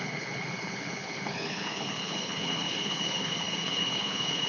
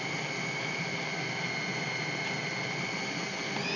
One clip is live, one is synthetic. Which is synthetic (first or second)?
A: first